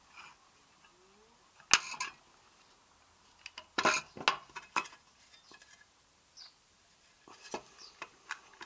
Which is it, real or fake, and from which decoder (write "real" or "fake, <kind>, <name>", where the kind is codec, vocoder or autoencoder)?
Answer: real